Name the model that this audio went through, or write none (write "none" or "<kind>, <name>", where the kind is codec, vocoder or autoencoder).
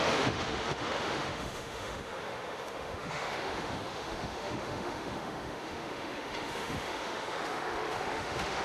autoencoder, DAC-VAE